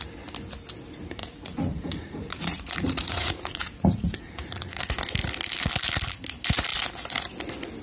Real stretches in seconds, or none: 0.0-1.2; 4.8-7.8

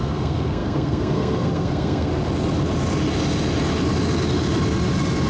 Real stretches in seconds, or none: 2.1-5.3

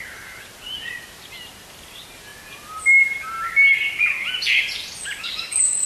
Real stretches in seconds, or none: 0.0-5.2